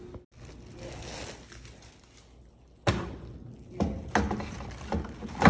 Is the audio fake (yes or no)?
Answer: no